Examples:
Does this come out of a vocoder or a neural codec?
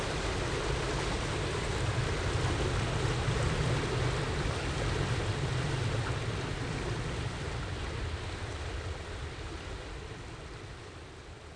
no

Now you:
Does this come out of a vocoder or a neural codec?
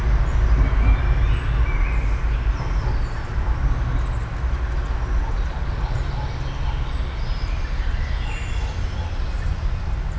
no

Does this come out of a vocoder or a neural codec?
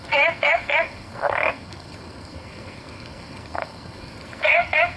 yes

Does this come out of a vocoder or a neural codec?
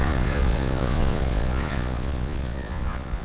yes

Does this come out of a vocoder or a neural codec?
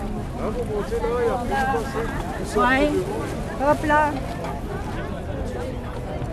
no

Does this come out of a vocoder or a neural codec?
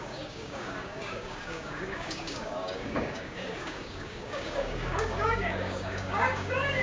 yes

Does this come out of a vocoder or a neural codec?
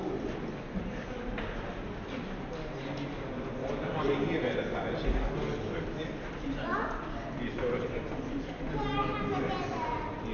no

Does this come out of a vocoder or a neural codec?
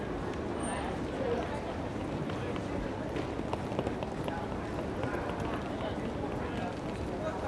no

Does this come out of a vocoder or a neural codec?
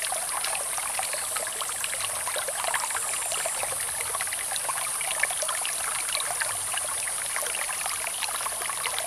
no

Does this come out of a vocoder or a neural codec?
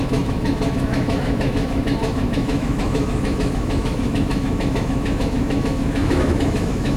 yes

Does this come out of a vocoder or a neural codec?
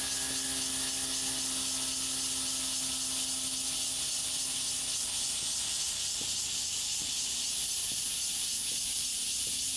no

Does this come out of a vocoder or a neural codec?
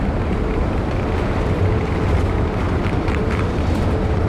yes